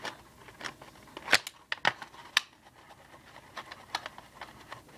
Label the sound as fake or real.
real